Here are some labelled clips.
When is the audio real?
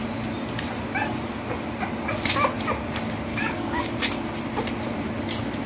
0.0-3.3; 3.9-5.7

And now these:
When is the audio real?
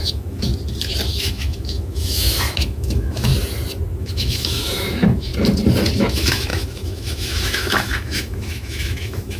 0.5-1.1; 3.3-4.0; 5.3-6.0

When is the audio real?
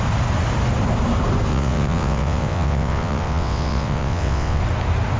0.0-1.5; 4.6-5.2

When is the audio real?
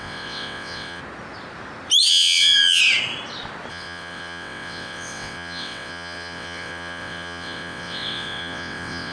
1.0-2.1; 2.8-3.7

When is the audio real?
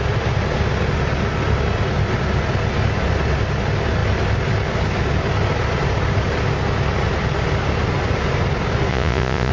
0.0-8.9